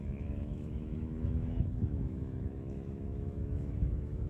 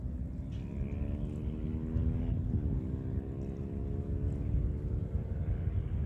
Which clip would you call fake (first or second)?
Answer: first